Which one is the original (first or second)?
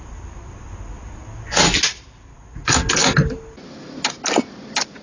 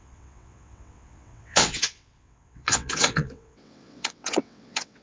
first